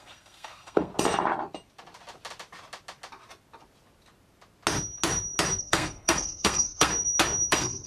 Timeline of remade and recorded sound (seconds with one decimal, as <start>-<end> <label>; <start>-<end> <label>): 0.0-0.9 remade; 0.9-5.6 recorded; 5.6-6.9 remade; 6.9-7.5 recorded; 7.5-7.9 remade